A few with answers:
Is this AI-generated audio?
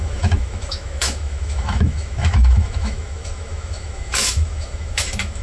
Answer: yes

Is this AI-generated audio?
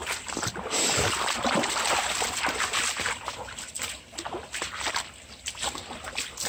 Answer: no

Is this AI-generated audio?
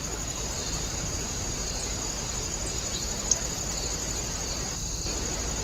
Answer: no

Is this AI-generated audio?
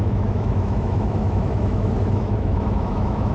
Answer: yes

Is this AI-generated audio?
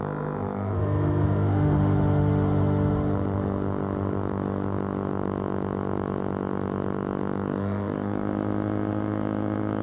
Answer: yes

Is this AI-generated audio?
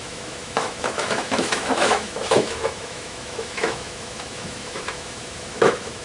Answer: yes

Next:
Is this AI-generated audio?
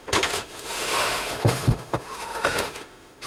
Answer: yes